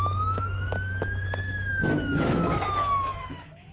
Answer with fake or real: fake